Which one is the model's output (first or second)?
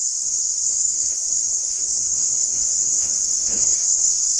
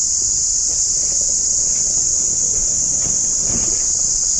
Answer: first